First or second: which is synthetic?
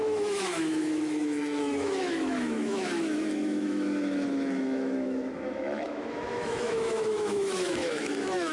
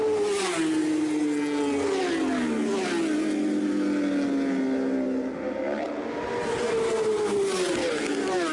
first